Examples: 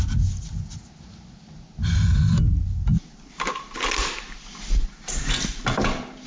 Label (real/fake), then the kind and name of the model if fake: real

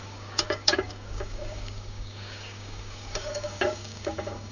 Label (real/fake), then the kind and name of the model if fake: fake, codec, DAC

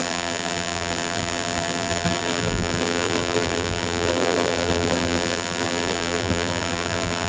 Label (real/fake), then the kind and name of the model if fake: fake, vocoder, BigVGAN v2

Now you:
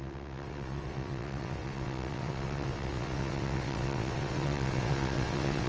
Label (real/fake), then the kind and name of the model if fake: fake, vocoder, WaveNeXt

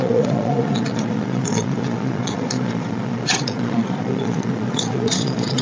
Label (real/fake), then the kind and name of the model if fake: fake, vocoder, Vocos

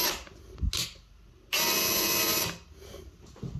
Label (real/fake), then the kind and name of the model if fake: real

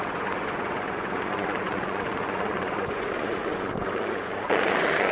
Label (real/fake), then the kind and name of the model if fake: fake, vocoder, Vocos